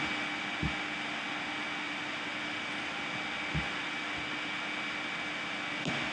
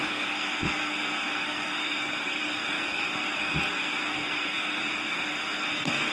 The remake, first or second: second